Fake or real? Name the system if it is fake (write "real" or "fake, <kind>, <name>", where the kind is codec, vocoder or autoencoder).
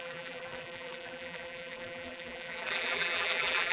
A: fake, vocoder, BigVGAN v2